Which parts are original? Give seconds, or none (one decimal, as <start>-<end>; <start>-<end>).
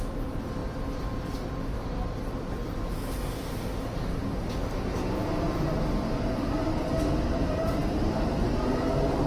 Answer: 0.0-9.3